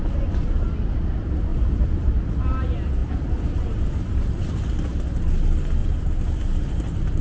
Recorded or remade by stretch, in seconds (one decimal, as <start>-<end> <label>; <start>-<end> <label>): 0.0-1.5 recorded; 1.5-2.0 remade; 2.0-3.0 recorded; 3.0-3.9 remade; 3.9-5.8 recorded; 5.8-6.6 remade; 6.6-7.2 recorded